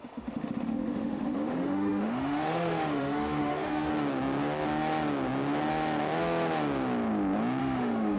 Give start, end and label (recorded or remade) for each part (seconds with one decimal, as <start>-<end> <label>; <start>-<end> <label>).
0.0-3.9 remade; 3.9-7.6 recorded; 7.6-8.2 remade